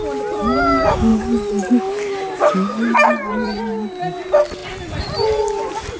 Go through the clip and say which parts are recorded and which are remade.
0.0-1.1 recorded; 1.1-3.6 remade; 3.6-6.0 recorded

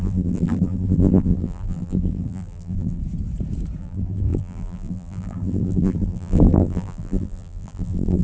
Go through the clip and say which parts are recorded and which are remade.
0.0-3.0 remade; 3.0-3.8 recorded; 3.8-8.2 remade

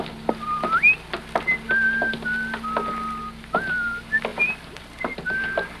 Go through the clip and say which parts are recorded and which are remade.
0.0-4.3 recorded; 4.3-5.0 remade; 5.0-5.8 recorded

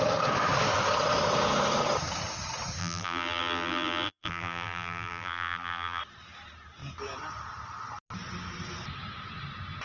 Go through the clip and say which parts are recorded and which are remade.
0.0-2.8 recorded; 2.8-6.0 remade; 6.0-9.8 recorded

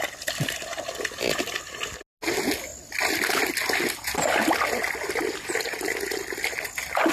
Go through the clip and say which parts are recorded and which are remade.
0.0-7.1 recorded

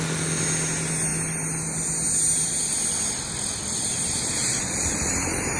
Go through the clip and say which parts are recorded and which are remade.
0.0-4.5 recorded; 4.5-5.1 remade; 5.1-5.6 recorded

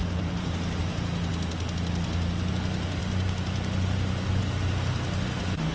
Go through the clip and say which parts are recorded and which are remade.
0.0-0.9 remade; 0.9-3.0 recorded; 3.0-4.4 remade; 4.4-5.7 recorded

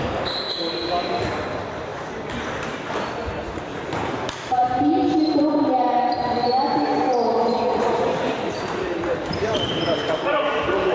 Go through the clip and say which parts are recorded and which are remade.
0.0-0.8 remade; 0.8-1.5 recorded; 1.5-1.9 remade; 1.9-2.4 recorded; 2.4-10.9 remade